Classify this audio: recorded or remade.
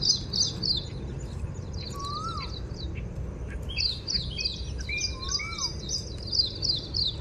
recorded